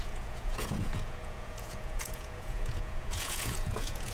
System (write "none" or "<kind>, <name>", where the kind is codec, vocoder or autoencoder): vocoder, Vocos